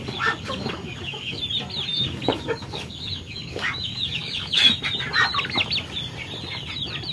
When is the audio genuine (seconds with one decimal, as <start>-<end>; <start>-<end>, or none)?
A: 1.4-1.9; 4.6-7.1